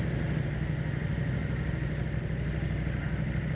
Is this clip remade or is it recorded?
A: recorded